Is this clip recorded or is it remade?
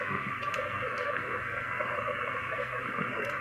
remade